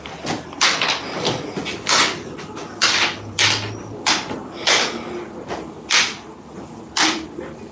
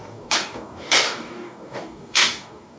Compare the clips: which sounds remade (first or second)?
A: second